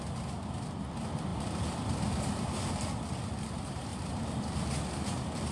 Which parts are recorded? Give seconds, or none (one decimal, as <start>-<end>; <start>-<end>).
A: 0.0-1.3; 2.6-5.5